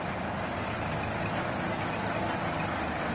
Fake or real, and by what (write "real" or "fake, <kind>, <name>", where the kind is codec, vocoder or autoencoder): real